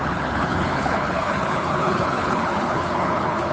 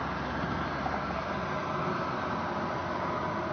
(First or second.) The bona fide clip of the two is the second